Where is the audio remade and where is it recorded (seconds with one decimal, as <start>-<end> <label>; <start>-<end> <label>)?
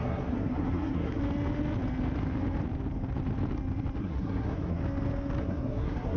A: 0.0-1.2 remade; 1.2-4.0 recorded; 4.0-4.8 remade; 4.8-5.4 recorded; 5.4-6.2 remade